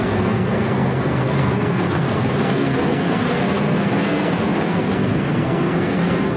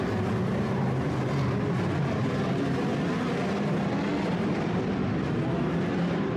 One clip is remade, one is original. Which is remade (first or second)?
first